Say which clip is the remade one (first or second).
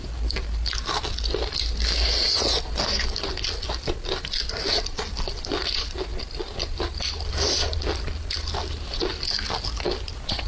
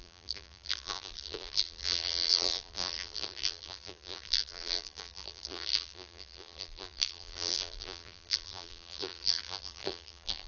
second